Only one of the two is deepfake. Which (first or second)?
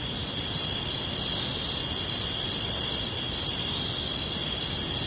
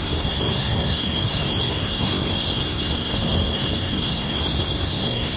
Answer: second